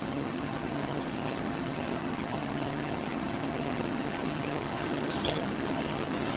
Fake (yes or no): yes